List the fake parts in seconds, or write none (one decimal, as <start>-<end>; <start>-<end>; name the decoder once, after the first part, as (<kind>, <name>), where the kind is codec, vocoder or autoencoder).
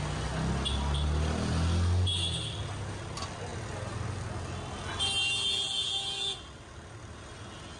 none